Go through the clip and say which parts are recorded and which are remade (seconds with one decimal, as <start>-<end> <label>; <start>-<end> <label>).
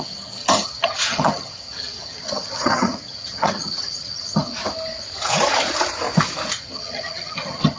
0.0-4.5 remade; 4.5-6.5 recorded; 6.5-7.8 remade